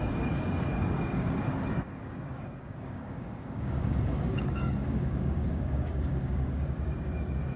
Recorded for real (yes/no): no